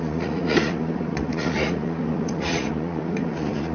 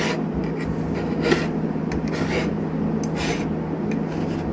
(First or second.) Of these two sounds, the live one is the second